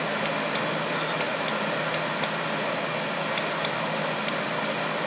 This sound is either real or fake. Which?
real